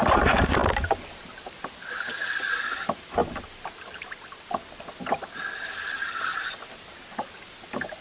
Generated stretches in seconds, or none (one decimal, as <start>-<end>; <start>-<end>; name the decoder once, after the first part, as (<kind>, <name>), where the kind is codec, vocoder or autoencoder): none